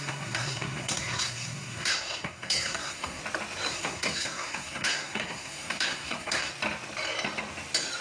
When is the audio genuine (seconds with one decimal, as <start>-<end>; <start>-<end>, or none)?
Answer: 3.2-3.7; 6.5-8.0

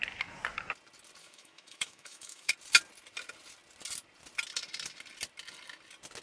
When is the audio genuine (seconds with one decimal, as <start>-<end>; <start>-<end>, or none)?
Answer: 0.0-1.2; 2.5-6.2

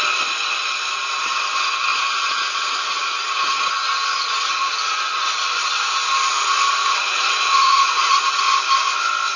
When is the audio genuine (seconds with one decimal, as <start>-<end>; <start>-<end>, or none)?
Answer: 0.0-1.9; 5.5-6.3; 8.2-9.4

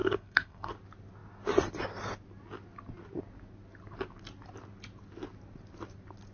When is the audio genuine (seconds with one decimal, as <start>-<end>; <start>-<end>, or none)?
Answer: 0.7-6.3

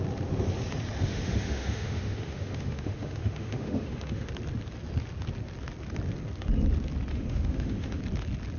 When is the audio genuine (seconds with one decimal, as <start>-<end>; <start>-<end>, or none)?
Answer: 0.0-1.1; 4.3-7.1; 8.0-8.6

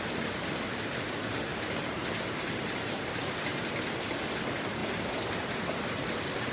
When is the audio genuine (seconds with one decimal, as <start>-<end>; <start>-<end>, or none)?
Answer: 0.0-1.5; 3.6-6.5

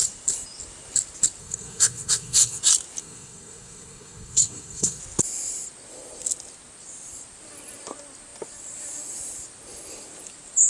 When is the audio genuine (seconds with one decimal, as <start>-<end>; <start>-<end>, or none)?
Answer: 0.0-1.4; 2.6-3.0; 5.0-10.7

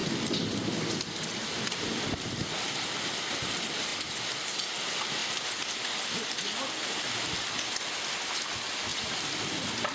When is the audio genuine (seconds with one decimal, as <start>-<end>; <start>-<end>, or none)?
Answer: 0.0-9.9